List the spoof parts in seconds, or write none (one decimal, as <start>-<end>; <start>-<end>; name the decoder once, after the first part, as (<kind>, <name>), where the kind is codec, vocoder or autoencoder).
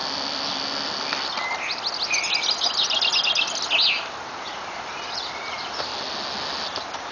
4.3-5.9 (vocoder, BigVGAN v2)